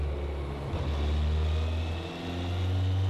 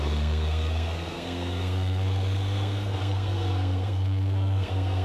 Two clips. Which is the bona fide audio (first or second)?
first